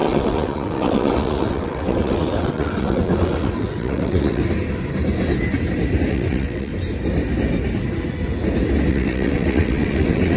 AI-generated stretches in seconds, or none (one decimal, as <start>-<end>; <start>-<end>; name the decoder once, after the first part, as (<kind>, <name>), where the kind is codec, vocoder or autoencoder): 0.0-4.4 (vocoder, WaveNeXt); 6.1-6.7; 8.9-10.4